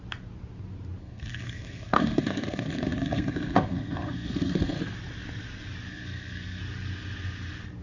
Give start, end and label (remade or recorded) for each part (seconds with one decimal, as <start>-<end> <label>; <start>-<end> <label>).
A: 0.0-1.0 recorded; 1.0-4.8 remade; 4.8-5.9 recorded; 5.9-6.6 remade; 6.6-7.8 recorded